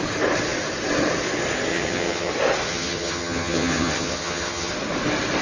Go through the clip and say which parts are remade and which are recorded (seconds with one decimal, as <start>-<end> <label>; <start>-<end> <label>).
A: 0.0-1.7 recorded; 1.7-2.3 remade; 2.3-2.7 recorded; 2.7-4.7 remade; 4.7-5.4 recorded